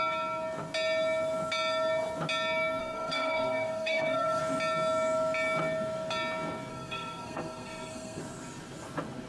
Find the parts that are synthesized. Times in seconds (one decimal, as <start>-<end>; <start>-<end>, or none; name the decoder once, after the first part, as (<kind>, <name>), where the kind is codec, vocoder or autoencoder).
2.8-4.4 (codec, SNAC); 6.7-8.2